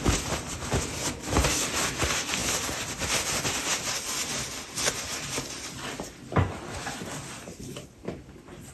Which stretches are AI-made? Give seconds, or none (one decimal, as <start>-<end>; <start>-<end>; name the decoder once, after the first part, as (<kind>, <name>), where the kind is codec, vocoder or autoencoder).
none